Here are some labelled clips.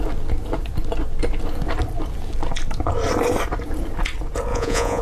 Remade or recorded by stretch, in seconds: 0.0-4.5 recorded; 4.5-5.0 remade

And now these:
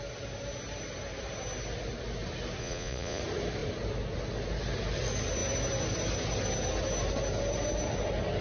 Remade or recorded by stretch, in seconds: 0.0-2.6 recorded; 2.6-3.2 remade; 3.2-8.4 recorded